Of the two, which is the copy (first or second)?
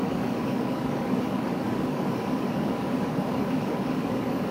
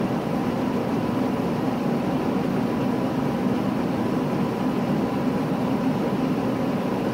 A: first